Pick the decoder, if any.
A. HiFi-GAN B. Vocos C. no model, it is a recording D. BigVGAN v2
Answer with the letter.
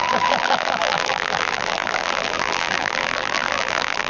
D